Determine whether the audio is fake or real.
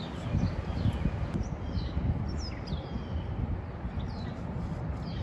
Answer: real